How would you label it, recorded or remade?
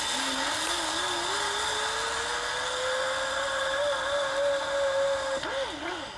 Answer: recorded